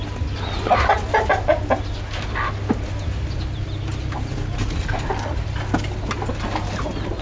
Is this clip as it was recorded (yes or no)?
yes